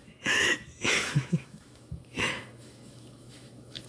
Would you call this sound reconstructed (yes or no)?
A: yes